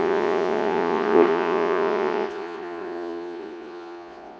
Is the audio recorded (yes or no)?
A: no